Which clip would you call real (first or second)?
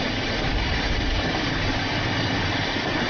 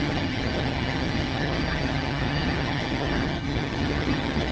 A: first